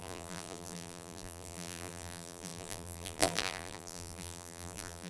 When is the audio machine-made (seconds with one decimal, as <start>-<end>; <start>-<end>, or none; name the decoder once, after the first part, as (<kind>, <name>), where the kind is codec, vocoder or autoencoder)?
0.0-5.1 (vocoder, BigVGAN v2)